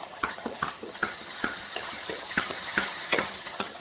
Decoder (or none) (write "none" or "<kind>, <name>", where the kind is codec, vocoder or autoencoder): vocoder, HiFi-GAN